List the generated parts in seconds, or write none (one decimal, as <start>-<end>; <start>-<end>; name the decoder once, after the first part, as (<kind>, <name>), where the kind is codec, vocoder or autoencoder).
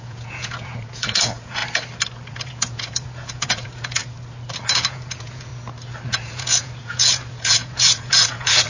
0.0-1.6 (vocoder, Vocos); 2.3-4.0; 4.9-5.5; 6.1-8.7